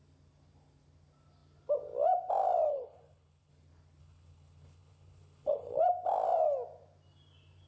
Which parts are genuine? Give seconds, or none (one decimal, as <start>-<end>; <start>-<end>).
0.0-2.7; 3.5-4.0; 5.8-7.7